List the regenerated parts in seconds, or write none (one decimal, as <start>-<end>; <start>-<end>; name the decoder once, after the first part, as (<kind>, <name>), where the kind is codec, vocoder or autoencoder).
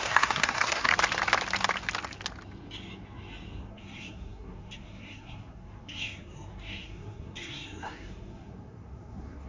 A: 0.0-0.9 (codec, SNAC); 3.7-9.5